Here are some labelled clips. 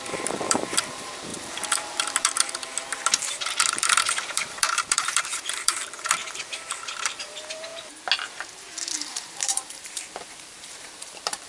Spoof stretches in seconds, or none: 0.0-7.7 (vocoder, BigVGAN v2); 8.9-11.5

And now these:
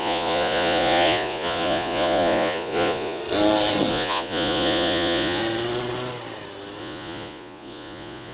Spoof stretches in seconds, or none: 0.0-3.2 (vocoder, Vocos); 3.9-5.4; 6.8-8.3

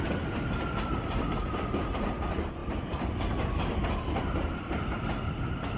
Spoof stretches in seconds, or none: none

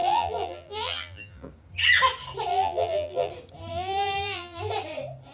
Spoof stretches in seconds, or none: 0.0-1.5 (vocoder, BigVGAN v2); 2.5-3.3; 3.7-4.6

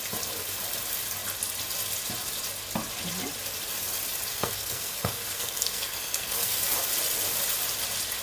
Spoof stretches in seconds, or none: 4.3-6.6 (codec, SNAC)